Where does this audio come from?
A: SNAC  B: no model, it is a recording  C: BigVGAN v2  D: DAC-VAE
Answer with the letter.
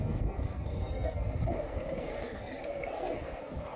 A